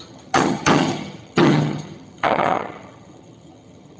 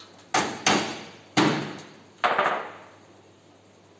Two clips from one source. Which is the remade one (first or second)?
first